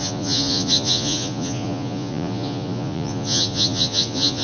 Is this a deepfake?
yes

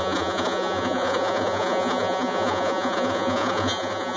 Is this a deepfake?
yes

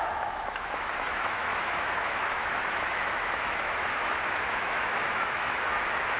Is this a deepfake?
yes